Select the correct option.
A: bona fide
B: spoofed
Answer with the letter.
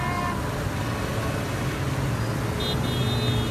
A